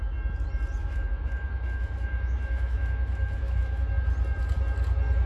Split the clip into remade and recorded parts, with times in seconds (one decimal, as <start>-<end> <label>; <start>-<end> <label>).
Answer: 0.0-0.8 recorded; 0.8-3.9 remade; 3.9-5.3 recorded